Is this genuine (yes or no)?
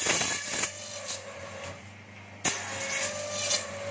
yes